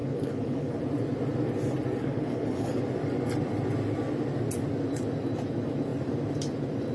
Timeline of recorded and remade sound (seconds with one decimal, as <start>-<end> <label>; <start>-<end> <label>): 0.0-0.8 remade; 0.8-2.0 recorded; 2.0-2.8 remade; 2.8-6.9 recorded